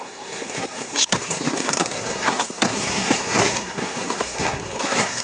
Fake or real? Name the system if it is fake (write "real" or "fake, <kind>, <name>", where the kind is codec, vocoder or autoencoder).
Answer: fake, codec, SNAC